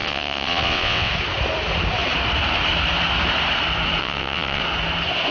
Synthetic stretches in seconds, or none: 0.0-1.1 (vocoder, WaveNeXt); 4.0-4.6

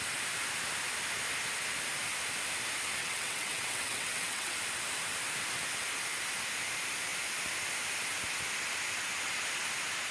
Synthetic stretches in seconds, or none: 3.0-4.5 (vocoder, WaveNeXt)